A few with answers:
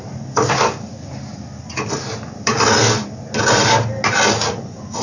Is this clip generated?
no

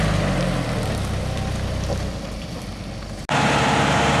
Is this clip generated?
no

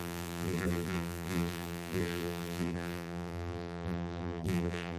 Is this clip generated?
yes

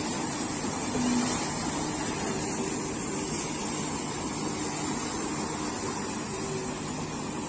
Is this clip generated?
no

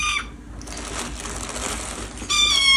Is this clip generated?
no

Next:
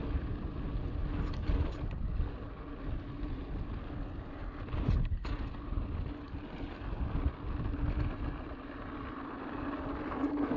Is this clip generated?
no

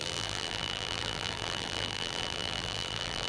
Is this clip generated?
yes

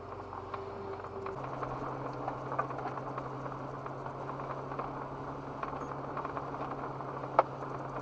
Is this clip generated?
no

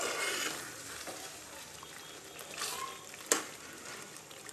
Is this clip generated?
no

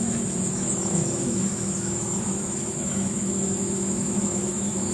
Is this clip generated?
yes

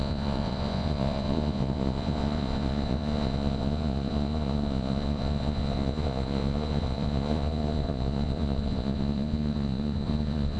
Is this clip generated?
yes